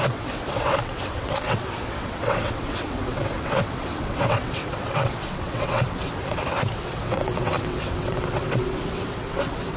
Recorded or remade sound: remade